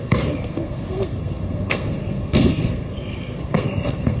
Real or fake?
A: fake